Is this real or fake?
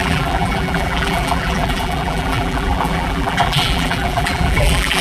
fake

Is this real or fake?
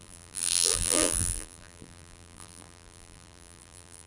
fake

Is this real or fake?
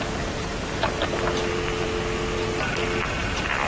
real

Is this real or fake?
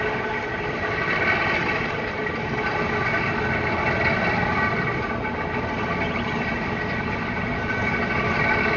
real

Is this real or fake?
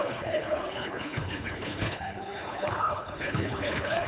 fake